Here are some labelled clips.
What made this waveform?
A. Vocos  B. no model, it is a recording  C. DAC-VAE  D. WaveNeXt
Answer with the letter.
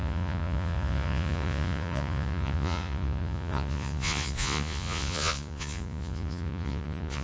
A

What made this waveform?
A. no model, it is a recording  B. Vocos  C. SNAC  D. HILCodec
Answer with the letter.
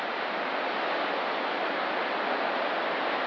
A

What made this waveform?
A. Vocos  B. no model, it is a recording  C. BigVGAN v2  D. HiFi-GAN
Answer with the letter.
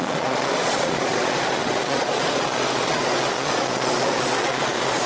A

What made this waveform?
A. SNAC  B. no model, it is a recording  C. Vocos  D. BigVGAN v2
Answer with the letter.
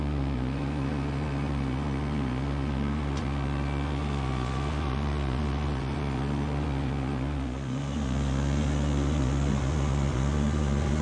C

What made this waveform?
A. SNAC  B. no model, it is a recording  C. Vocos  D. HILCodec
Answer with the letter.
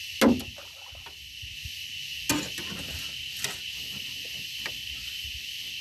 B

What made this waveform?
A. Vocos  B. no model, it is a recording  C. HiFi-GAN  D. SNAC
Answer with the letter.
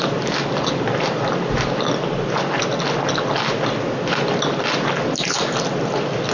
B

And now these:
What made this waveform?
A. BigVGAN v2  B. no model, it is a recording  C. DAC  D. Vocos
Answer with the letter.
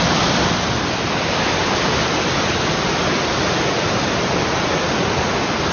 B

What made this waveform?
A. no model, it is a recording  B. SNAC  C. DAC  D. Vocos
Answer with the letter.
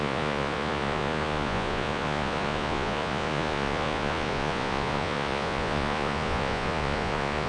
D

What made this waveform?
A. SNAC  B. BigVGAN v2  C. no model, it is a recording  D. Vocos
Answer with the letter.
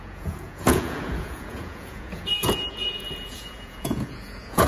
D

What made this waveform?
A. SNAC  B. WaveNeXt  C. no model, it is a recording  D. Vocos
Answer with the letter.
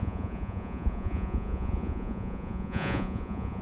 D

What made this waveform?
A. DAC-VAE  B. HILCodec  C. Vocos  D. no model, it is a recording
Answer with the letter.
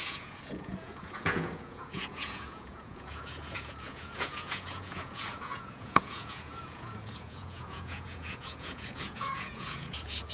C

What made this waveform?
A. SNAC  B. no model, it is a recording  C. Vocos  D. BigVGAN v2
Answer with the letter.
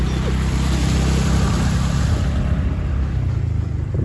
B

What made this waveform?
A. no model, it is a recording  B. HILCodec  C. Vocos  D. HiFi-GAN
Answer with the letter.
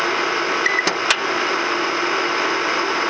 A